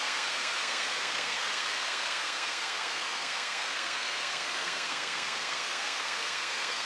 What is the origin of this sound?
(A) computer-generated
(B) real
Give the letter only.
A